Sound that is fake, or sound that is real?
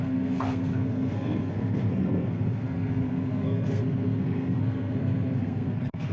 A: fake